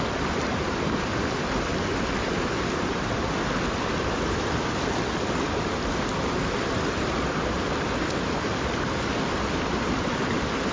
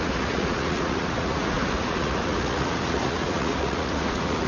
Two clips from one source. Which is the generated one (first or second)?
second